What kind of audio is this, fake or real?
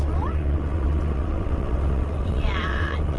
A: fake